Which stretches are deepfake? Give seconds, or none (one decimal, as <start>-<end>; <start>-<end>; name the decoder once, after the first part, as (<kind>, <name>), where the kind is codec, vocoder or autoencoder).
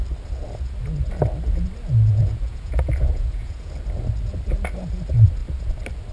2.1-3.7 (vocoder, Vocos)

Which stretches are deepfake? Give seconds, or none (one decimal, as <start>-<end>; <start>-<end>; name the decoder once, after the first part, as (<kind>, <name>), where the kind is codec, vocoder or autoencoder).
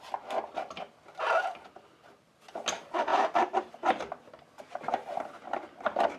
none